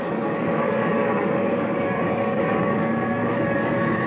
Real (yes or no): no